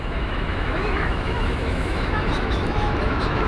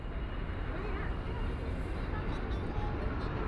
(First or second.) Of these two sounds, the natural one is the second